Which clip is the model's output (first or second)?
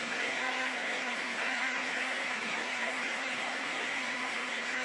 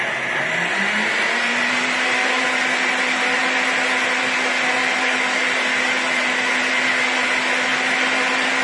first